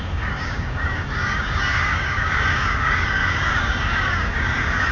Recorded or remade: remade